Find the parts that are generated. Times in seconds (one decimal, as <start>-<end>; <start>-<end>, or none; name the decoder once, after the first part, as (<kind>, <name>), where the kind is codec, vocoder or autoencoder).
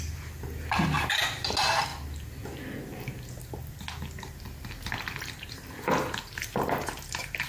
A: none